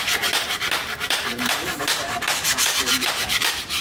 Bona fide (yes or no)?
no